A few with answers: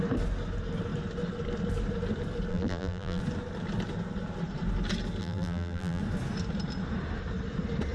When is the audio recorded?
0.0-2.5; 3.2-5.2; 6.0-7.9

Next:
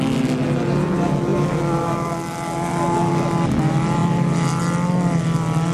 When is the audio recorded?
0.0-5.7

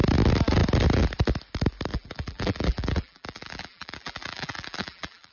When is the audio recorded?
0.0-1.9